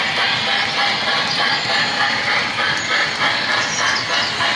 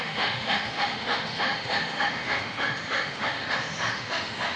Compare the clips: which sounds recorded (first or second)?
first